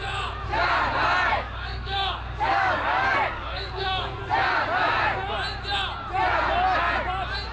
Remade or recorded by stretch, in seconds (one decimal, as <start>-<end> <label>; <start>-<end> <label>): 0.0-1.3 recorded; 1.3-4.2 remade; 4.2-7.5 recorded